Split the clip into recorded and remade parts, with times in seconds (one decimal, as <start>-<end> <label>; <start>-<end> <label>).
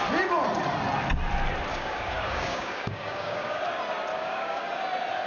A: 0.0-1.7 recorded; 1.7-3.6 remade; 3.6-4.1 recorded; 4.1-4.6 remade; 4.6-5.3 recorded